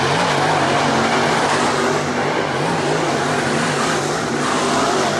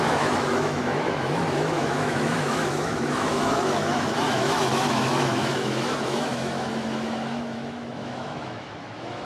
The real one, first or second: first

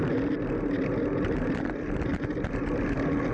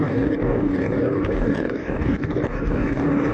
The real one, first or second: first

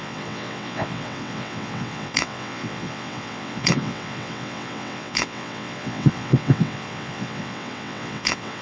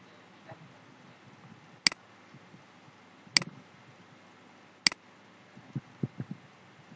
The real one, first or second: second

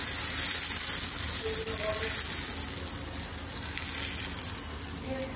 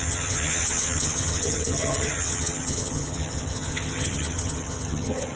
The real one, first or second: first